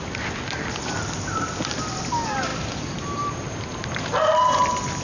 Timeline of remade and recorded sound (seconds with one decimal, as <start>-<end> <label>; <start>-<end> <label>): 0.0-2.5 recorded; 2.5-3.2 remade; 3.2-5.0 recorded